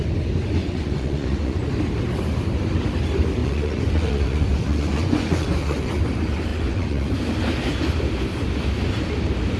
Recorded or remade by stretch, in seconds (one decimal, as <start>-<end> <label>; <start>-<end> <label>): 0.0-0.6 recorded; 0.6-1.7 remade; 1.7-3.4 recorded; 3.4-6.0 remade; 6.0-6.5 recorded; 6.5-7.1 remade; 7.1-9.6 recorded